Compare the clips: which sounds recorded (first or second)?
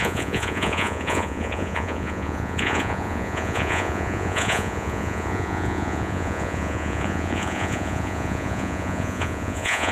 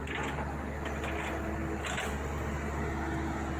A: second